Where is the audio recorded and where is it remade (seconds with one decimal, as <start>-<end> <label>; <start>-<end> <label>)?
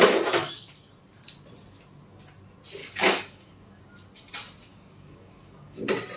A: 0.0-0.4 recorded; 0.4-0.9 remade; 0.9-2.8 recorded; 2.8-3.8 remade; 3.8-4.7 recorded; 4.7-5.8 remade; 5.8-6.2 recorded